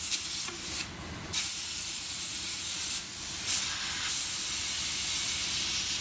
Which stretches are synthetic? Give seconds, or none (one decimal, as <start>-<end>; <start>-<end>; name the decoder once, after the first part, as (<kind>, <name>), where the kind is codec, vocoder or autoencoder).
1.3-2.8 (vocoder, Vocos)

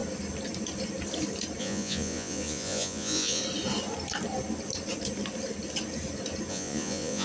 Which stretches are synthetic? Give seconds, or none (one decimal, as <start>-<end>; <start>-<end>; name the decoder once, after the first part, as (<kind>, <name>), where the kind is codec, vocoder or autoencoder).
1.6-3.4 (vocoder, Vocos); 6.5-7.2

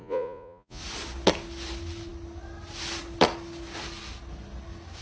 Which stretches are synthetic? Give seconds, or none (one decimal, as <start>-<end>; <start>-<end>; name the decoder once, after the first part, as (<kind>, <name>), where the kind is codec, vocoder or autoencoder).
0.0-0.8 (vocoder, Vocos)

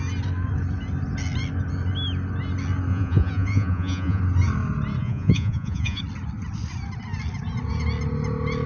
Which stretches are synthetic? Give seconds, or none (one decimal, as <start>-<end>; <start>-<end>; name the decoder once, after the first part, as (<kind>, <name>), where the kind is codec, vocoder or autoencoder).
2.9-4.2 (vocoder, Vocos); 5.0-6.0

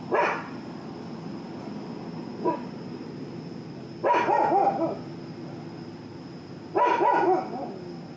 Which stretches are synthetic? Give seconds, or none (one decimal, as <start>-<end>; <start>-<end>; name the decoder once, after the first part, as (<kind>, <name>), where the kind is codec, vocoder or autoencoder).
none

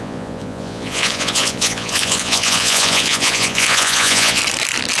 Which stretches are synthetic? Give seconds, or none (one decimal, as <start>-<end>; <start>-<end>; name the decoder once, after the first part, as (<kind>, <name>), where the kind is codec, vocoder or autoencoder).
0.0-4.4 (vocoder, Vocos)

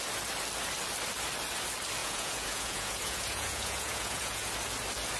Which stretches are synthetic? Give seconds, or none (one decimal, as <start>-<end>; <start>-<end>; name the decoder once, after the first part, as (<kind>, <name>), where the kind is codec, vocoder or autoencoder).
2.0-4.5 (vocoder, Vocos)